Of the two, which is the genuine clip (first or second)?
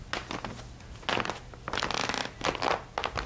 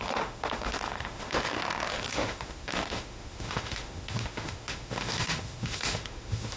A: first